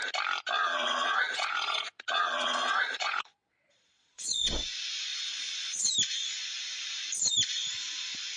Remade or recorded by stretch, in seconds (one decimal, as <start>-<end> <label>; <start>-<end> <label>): 0.0-0.6 recorded; 0.6-4.5 remade; 4.5-5.1 recorded; 5.1-5.9 remade; 5.9-8.4 recorded